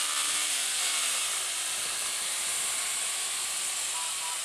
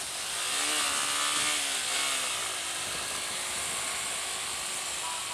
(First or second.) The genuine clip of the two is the second